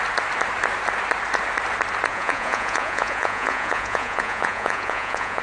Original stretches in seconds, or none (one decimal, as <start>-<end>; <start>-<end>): 0.0-2.1